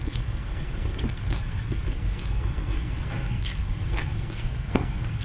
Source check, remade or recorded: remade